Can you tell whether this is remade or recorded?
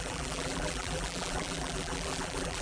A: remade